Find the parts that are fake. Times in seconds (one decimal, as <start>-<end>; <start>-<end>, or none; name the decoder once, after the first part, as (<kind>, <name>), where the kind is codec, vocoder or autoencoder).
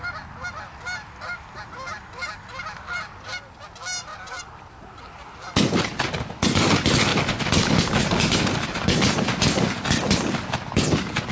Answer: none